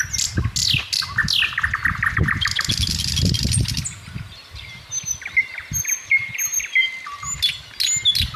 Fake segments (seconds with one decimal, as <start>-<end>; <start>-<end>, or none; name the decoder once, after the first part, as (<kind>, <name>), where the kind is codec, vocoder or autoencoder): none